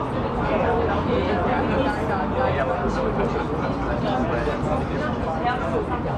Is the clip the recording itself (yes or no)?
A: yes